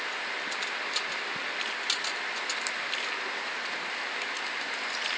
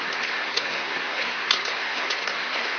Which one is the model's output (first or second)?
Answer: second